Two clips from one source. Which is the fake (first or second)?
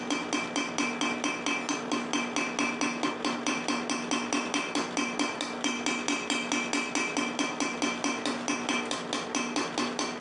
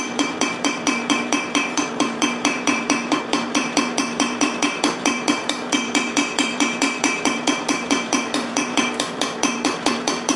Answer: second